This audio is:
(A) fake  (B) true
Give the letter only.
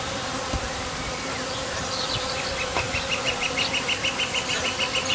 A